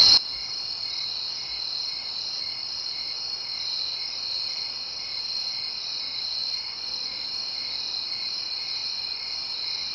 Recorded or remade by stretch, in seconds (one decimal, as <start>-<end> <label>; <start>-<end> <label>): 0.0-6.4 recorded; 6.4-7.1 remade; 7.1-8.8 recorded; 8.8-9.4 remade; 9.4-9.9 recorded